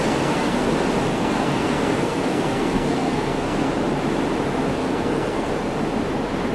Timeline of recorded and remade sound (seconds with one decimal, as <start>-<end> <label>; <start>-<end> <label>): 0.0-0.7 remade; 0.7-1.1 recorded; 1.1-3.7 remade; 3.7-4.8 recorded; 4.8-5.5 remade; 5.5-6.5 recorded